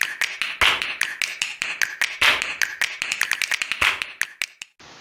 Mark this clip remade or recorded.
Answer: recorded